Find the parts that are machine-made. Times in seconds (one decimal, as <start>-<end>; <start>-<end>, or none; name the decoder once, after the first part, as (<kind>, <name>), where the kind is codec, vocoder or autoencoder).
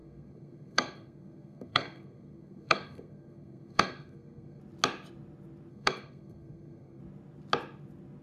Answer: 0.0-4.6 (codec, SNAC); 5.7-7.0